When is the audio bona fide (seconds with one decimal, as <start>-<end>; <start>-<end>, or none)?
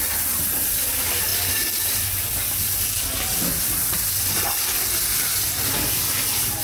0.0-6.6